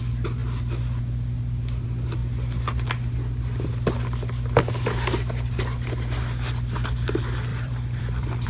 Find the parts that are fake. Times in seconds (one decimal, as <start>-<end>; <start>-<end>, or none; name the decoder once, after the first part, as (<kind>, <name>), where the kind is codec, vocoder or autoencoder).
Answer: 7.5-8.5 (vocoder, BigVGAN v2)